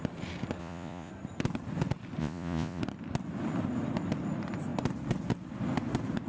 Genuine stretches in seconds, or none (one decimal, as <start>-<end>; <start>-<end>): 0.0-0.6; 1.1-2.2; 2.8-6.3